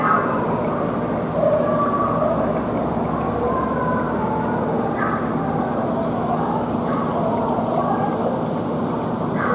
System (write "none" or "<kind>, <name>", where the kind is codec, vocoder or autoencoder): none